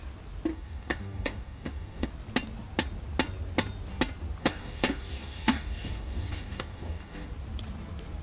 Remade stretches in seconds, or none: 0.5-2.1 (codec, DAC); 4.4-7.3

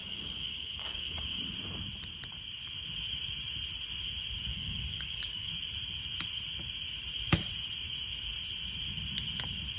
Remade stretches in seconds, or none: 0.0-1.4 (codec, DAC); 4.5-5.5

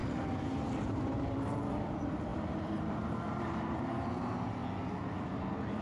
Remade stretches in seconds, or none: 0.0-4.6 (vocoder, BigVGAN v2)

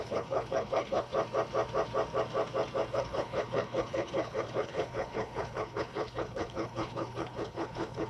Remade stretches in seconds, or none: 0.0-1.1 (codec, HILCodec); 2.9-8.1